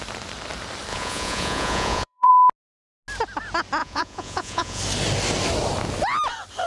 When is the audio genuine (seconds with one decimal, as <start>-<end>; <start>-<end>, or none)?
0.0-0.9; 2.3-3.8; 4.8-6.7